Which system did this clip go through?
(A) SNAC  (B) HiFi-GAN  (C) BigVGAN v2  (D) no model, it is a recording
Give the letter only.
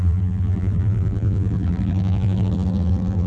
C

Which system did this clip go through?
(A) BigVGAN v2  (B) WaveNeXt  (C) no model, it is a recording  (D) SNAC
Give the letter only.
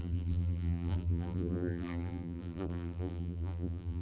A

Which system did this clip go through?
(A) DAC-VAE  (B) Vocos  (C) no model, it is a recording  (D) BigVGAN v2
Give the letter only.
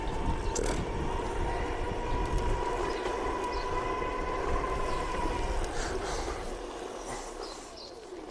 C